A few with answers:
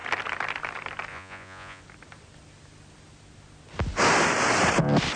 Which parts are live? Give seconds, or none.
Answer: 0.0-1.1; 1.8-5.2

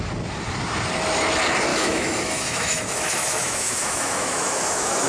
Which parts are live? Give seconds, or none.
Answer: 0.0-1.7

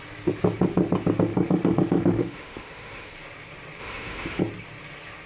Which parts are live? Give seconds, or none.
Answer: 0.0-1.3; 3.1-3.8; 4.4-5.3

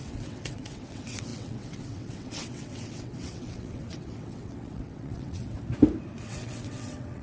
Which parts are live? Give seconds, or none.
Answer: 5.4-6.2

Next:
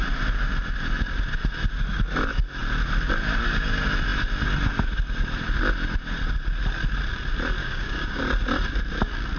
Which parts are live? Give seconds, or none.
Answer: 0.0-7.6; 8.2-9.4

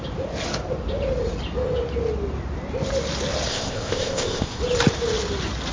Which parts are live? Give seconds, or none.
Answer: 0.0-3.5; 4.6-5.7